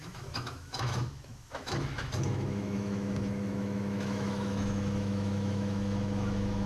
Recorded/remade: remade